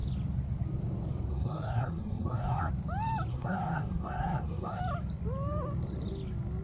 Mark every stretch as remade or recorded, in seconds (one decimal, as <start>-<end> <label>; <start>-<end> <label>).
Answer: 0.0-1.3 recorded; 1.3-2.7 remade; 2.7-3.3 recorded; 3.3-4.8 remade; 4.8-6.6 recorded